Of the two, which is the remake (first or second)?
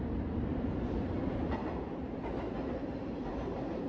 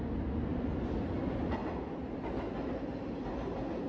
first